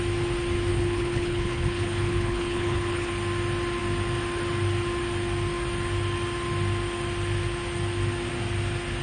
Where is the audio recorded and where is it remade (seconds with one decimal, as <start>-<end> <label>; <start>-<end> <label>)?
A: 0.0-0.7 recorded; 0.7-3.1 remade; 3.1-9.0 recorded